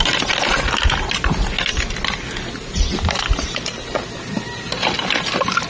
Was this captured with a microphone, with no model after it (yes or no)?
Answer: yes